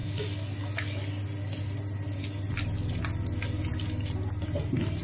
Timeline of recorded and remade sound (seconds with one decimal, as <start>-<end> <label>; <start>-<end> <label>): 0.0-5.0 recorded